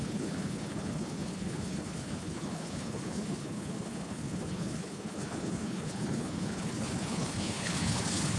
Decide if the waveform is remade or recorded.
remade